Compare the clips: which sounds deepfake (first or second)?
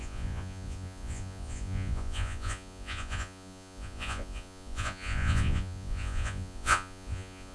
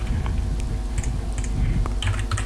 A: first